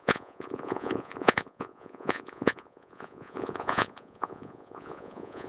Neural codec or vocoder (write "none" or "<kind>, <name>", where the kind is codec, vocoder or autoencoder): vocoder, Vocos